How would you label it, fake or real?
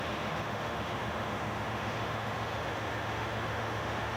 fake